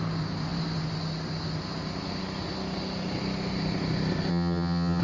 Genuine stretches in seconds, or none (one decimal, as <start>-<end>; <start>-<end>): 0.0-4.3